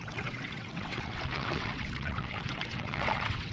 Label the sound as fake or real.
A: fake